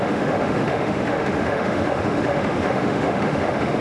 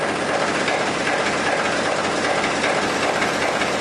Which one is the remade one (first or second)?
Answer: first